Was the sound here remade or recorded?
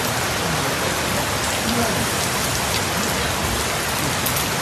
recorded